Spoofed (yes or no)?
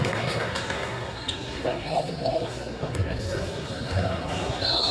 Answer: yes